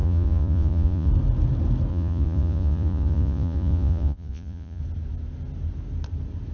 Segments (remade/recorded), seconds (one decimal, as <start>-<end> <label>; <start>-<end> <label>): 0.0-1.1 remade; 1.1-1.9 recorded; 1.9-4.8 remade; 4.8-6.5 recorded